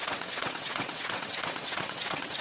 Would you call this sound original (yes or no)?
no